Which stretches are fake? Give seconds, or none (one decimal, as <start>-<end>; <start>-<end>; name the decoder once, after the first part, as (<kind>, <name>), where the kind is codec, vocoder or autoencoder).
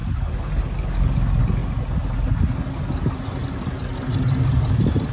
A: none